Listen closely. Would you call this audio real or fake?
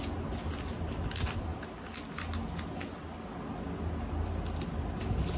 real